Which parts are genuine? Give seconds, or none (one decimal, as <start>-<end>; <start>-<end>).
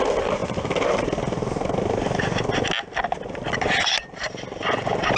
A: 0.0-5.2